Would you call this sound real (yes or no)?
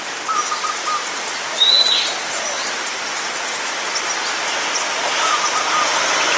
yes